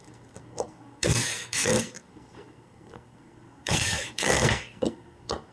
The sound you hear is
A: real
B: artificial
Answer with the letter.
B